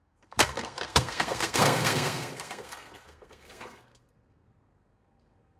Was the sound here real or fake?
fake